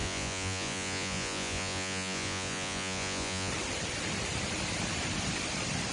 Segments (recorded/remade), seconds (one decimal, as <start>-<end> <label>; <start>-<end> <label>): 0.0-3.5 remade; 3.5-5.9 recorded